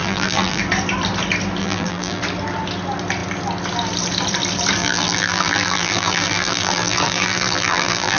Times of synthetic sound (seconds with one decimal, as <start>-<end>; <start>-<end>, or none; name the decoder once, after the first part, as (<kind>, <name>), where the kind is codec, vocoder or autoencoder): 0.0-0.6 (vocoder, BigVGAN v2); 1.6-2.2; 4.8-8.2